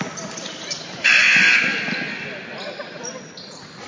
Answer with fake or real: real